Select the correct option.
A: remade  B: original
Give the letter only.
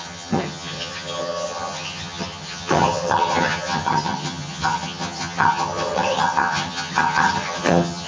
A